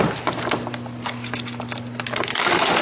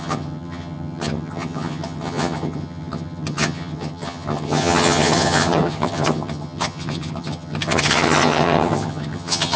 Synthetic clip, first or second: second